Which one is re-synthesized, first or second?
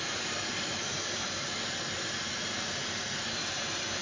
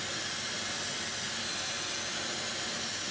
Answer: first